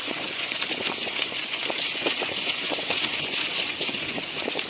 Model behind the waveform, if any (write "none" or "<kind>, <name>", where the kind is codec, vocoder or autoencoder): vocoder, Vocos